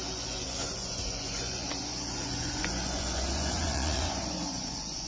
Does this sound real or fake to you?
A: fake